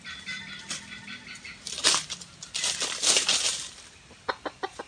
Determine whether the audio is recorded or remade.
recorded